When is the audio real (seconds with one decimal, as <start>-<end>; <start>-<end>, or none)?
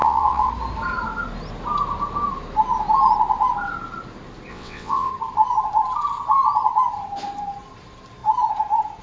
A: 0.5-4.5; 5.1-9.0